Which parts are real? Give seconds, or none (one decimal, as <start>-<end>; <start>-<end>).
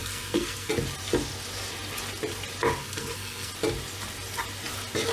0.7-2.8; 3.5-5.1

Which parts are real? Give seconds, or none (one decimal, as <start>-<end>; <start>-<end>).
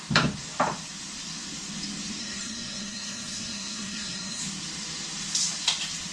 0.0-2.2; 4.4-6.1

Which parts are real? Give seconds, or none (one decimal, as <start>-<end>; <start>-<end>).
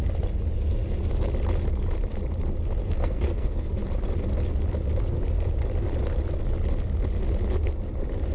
0.0-2.8; 3.7-8.3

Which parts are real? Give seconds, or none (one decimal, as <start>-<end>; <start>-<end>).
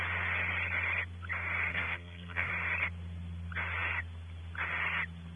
0.0-1.7; 2.5-5.4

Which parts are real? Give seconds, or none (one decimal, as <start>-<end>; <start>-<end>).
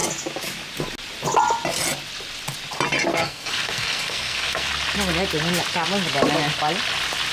0.0-3.1; 4.7-7.3